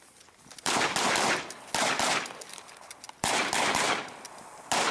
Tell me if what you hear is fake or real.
real